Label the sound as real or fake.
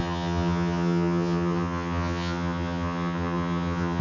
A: fake